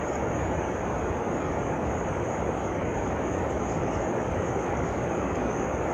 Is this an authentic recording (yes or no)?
no